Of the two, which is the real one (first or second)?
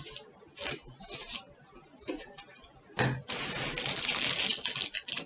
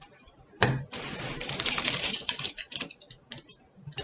first